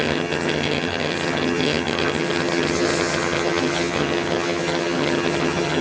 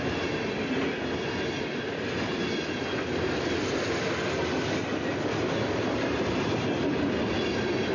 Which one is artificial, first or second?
first